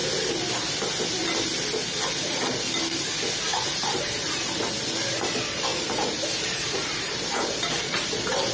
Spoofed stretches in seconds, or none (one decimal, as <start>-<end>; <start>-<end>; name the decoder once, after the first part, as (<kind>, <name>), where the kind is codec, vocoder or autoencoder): 3.5-4.7 (vocoder, BigVGAN v2); 5.7-8.5